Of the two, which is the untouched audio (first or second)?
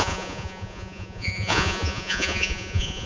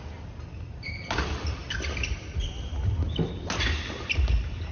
second